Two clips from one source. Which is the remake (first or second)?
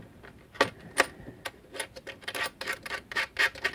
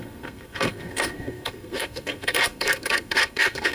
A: second